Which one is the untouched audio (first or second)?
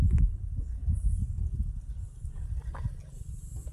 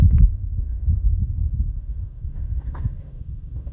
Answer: first